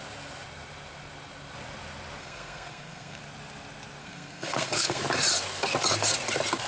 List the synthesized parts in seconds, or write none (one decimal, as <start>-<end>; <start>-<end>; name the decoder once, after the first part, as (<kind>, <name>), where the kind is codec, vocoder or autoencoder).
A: 2.2-3.2 (codec, SNAC); 4.0-5.0